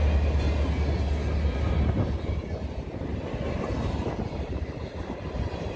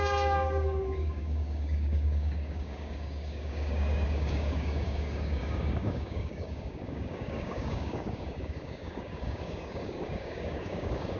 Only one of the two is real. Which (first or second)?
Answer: first